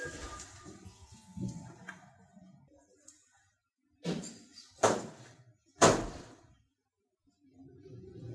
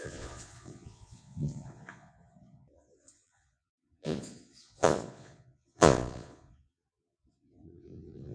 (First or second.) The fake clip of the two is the second